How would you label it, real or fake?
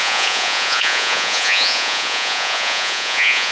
fake